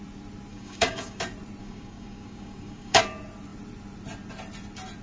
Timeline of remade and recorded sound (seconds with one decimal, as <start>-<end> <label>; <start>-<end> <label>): 0.0-0.5 recorded; 0.5-1.2 remade; 1.2-1.6 recorded; 1.6-3.0 remade; 3.0-5.0 recorded